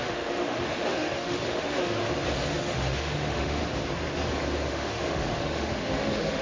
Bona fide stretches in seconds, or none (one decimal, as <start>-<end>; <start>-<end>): 2.0-2.6; 3.6-4.7